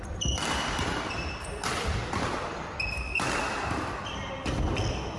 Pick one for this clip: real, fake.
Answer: real